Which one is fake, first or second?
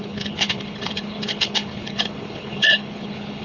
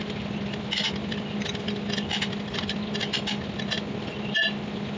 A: first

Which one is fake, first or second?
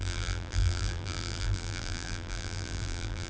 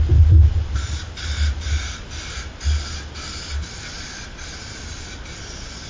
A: first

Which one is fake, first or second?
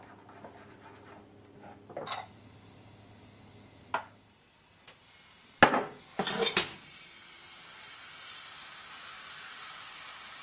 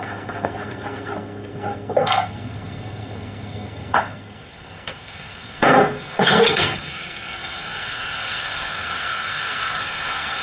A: second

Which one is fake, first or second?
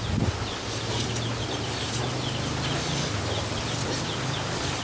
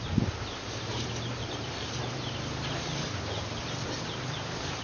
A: second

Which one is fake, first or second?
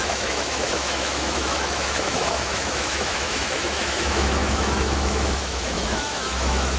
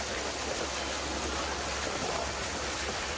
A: first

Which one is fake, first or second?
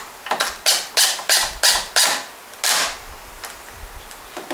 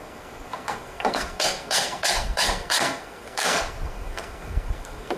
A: second